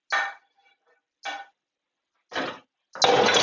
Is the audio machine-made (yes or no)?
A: no